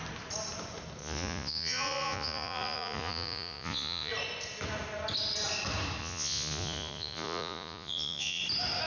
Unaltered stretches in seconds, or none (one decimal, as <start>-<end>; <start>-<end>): 0.0-1.0; 4.1-6.0; 8.4-8.9